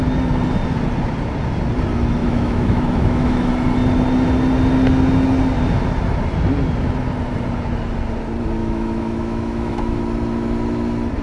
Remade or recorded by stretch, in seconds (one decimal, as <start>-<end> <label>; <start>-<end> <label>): 0.0-2.2 recorded; 2.2-3.5 remade; 3.5-8.6 recorded; 8.6-10.0 remade; 10.0-11.2 recorded